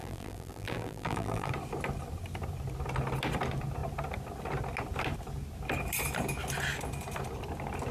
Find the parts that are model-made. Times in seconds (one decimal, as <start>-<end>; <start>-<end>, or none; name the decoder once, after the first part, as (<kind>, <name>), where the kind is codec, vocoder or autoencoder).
0.0-1.5 (vocoder, BigVGAN v2)